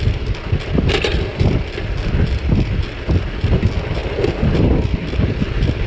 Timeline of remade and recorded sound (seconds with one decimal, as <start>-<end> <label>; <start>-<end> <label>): 0.0-5.9 recorded